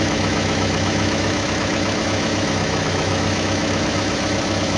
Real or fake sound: fake